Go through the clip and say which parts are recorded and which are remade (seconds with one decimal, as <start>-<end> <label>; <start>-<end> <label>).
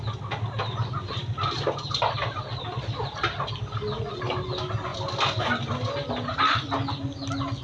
0.0-7.6 recorded